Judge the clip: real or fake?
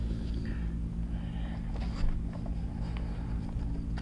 real